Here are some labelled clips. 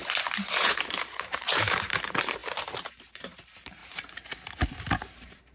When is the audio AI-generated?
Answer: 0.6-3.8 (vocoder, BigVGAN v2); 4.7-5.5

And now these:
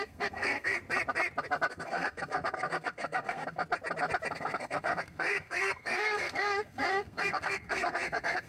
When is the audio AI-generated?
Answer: 0.0-0.8 (codec, SNAC); 1.7-3.6; 4.3-8.5